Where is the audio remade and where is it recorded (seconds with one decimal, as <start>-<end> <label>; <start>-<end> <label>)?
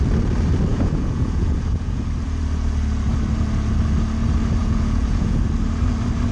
0.0-0.7 recorded; 0.7-2.0 remade; 2.0-4.6 recorded; 4.6-5.4 remade; 5.4-6.3 recorded